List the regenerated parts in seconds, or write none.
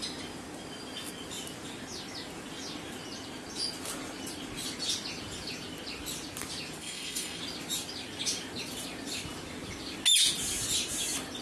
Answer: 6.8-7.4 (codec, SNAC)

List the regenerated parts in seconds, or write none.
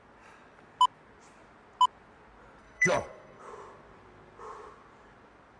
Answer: 2.6-3.4 (codec, SNAC)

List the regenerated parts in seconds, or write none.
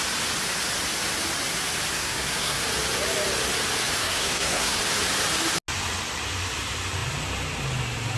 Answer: 1.9-2.6 (codec, SNAC); 4.0-4.8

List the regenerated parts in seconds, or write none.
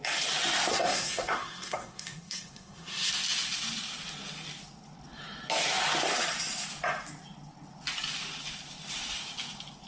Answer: 0.7-3.1 (codec, SNAC)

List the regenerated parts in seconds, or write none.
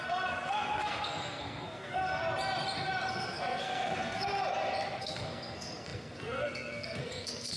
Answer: 0.0-2.2 (codec, SNAC); 3.1-4.3; 5.0-7.6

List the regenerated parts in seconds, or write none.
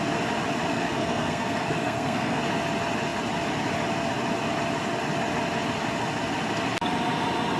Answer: 0.7-2.4 (codec, SNAC)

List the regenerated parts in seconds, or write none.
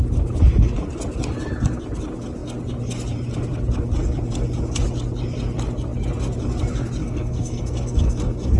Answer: 7.0-8.6 (codec, SNAC)